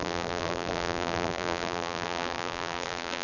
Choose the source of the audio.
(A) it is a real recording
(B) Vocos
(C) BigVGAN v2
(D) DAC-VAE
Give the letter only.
C